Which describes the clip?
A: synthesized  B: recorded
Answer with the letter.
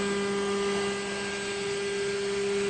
B